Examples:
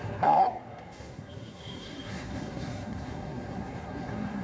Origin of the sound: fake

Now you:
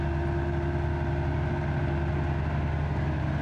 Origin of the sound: real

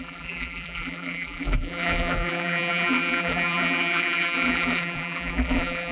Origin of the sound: fake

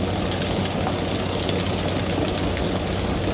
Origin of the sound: real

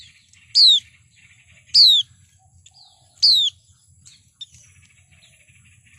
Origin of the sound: real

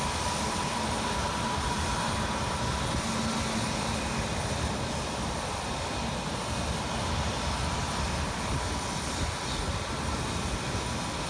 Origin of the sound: real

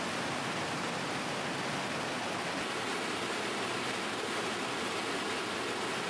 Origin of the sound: real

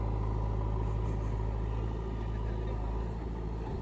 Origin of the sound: real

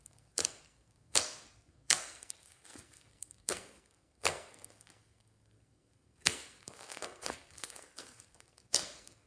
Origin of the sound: fake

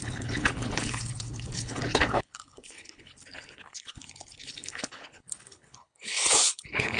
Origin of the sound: fake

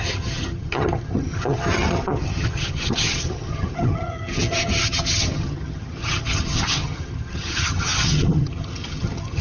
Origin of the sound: fake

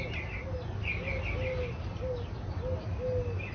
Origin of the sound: real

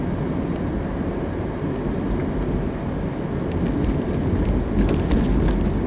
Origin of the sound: real